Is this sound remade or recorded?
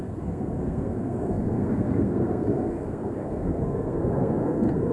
remade